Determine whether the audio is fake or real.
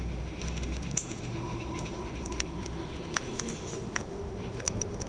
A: fake